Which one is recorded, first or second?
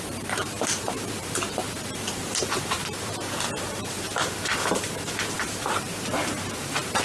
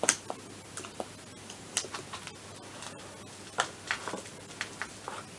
second